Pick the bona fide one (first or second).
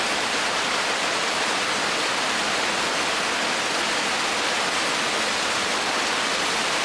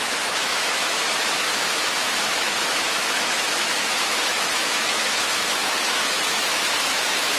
first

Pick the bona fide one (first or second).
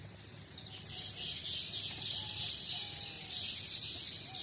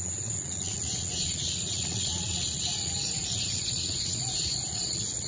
first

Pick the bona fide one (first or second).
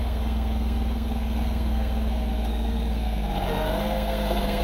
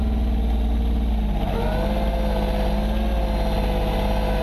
second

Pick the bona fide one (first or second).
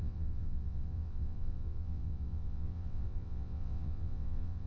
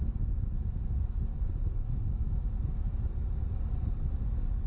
second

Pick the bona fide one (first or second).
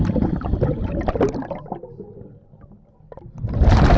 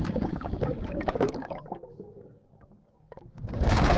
first